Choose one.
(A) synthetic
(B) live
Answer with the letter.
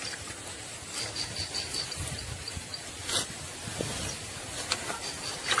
B